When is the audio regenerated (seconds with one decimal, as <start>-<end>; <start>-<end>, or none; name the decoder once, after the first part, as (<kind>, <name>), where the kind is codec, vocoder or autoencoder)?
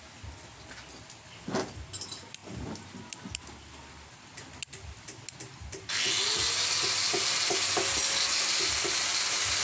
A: none